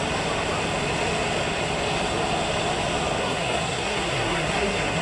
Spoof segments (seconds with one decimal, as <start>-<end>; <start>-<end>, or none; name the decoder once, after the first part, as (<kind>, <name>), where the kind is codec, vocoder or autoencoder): 3.2-5.0 (codec, SNAC)